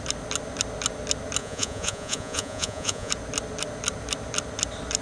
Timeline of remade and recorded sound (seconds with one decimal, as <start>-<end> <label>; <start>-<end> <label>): 0.0-1.4 recorded; 1.4-3.1 remade; 3.1-5.0 recorded